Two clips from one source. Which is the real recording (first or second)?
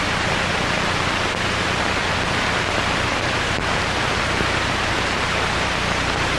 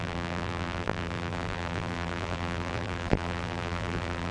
first